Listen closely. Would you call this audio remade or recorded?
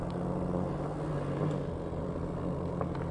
recorded